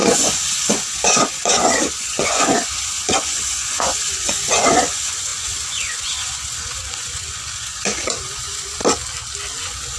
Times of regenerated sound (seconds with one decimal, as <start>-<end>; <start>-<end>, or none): 0.0-8.8; 9.6-10.0

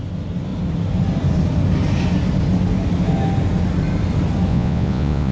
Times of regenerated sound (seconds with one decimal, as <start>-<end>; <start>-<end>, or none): 4.5-5.3